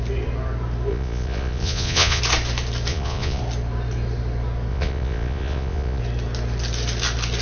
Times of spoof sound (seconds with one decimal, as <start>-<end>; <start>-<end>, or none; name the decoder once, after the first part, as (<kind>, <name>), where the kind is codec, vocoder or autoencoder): 0.9-2.2 (vocoder, Vocos); 2.9-3.4; 4.7-6.0